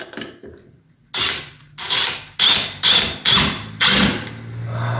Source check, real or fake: real